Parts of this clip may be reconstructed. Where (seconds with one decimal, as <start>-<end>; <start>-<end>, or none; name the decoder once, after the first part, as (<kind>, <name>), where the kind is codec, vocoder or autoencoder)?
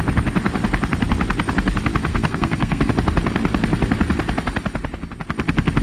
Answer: 2.1-2.9 (codec, SNAC)